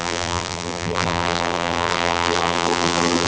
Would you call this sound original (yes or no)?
no